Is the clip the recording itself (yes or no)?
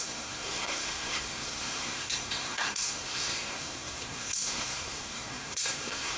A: no